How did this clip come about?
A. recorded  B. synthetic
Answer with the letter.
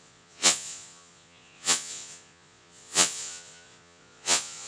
B